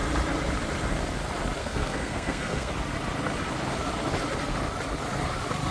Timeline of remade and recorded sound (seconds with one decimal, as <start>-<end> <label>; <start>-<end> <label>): 0.0-1.6 recorded; 1.6-2.7 remade; 2.7-5.7 recorded